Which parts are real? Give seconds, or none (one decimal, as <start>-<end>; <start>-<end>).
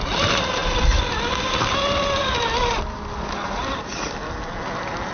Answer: 0.0-5.1